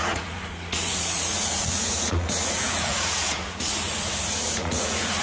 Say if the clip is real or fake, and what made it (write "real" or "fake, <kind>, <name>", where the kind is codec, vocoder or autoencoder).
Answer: fake, vocoder, Vocos